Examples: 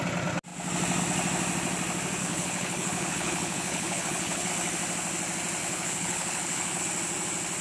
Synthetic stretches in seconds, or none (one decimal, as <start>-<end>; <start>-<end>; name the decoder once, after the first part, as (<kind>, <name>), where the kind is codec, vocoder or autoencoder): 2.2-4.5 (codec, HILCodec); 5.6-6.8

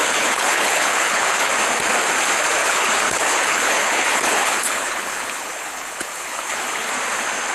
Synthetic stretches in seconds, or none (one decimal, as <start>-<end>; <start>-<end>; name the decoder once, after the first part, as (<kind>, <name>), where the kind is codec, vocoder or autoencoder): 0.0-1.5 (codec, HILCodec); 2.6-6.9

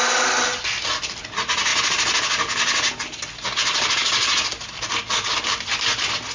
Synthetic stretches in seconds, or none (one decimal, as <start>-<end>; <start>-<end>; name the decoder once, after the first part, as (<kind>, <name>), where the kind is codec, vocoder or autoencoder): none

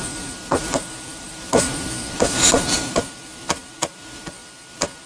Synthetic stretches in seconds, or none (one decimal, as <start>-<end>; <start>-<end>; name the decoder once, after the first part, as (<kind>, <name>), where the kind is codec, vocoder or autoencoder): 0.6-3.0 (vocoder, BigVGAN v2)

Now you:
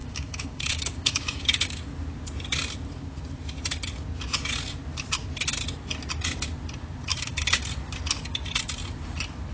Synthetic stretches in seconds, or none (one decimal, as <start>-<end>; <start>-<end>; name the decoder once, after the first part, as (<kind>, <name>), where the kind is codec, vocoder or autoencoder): 0.0-1.9 (codec, DAC); 7.1-7.6

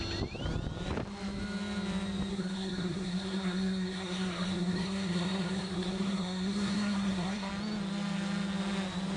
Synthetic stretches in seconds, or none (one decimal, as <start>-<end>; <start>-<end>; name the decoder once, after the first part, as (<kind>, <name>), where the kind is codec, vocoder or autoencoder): 2.3-7.5 (codec, SNAC)

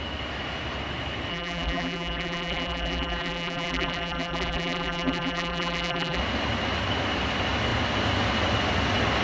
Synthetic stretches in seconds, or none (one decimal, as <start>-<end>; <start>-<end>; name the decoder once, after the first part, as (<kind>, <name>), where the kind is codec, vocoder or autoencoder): 1.3-6.2 (vocoder, BigVGAN v2)

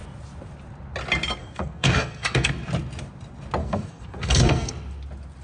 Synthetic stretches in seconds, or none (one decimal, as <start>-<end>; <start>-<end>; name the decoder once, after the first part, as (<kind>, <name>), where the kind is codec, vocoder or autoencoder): 1.4-2.5 (codec, SNAC); 3.6-4.7